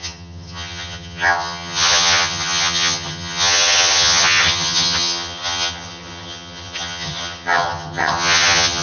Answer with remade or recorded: remade